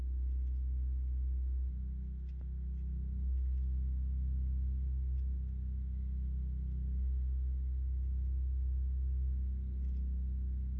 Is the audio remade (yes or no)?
no